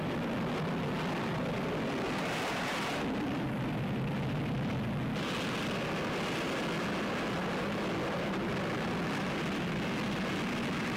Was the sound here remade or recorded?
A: recorded